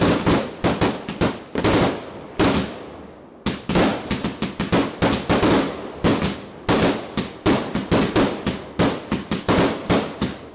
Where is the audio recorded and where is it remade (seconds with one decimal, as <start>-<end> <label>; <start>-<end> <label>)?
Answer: 0.0-10.5 recorded